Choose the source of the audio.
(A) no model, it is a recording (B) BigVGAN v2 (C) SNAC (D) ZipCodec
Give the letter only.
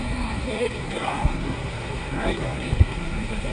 C